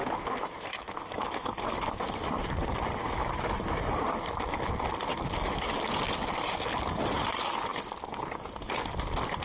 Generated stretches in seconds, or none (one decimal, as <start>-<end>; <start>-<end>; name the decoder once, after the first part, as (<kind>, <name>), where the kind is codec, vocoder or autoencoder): 0.0-2.3 (autoencoder, DAC-VAE); 3.0-3.6; 5.1-5.7

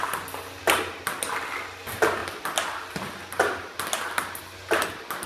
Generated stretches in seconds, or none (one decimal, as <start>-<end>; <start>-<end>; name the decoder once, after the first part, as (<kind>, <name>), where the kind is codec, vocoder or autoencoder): none

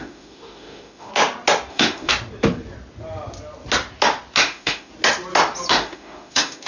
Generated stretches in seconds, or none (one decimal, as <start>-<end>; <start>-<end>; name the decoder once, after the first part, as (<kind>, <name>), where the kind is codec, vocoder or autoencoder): 0.0-1.1 (autoencoder, DAC-VAE); 1.7-2.1; 4.4-4.9; 5.7-6.7

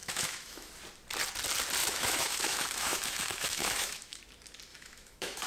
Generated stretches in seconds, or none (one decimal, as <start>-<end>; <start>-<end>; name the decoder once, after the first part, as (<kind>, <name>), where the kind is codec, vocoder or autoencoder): 0.0-0.7 (autoencoder, DAC-VAE); 1.8-4.2; 4.7-5.5

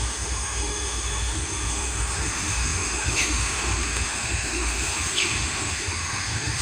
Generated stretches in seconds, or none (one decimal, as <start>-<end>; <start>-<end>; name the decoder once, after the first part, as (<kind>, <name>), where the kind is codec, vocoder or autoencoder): 0.0-6.6 (autoencoder, DAC-VAE)